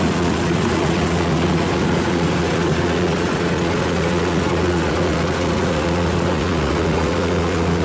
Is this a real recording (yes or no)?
no